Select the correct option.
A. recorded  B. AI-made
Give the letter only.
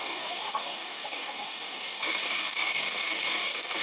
B